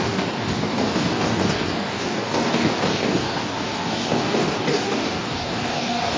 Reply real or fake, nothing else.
fake